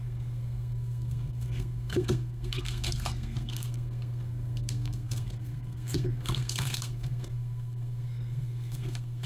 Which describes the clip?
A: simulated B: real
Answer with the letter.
A